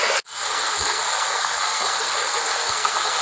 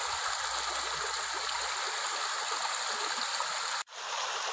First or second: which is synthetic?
first